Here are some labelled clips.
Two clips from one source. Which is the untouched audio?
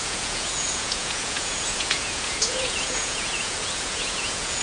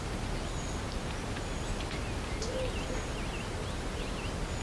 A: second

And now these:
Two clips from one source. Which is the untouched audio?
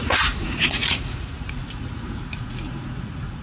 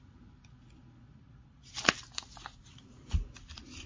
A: second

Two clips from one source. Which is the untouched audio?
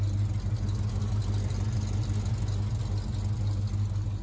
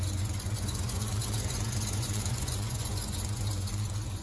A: first